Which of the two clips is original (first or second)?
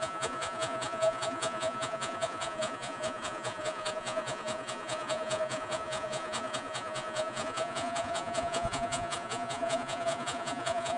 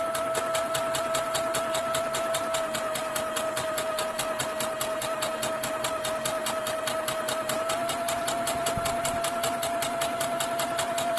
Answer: second